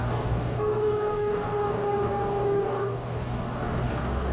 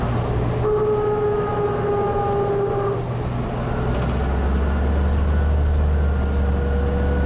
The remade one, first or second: first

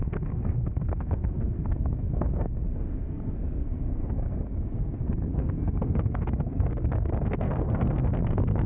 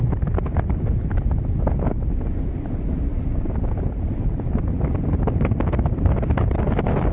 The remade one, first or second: first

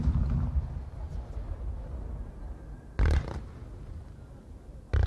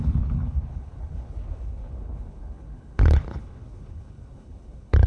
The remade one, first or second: second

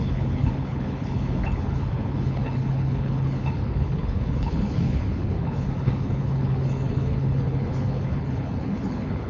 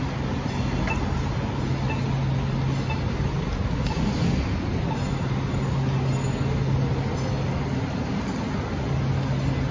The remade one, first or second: first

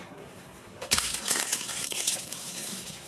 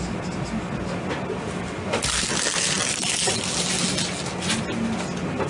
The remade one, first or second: first